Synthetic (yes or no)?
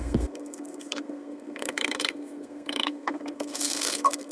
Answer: yes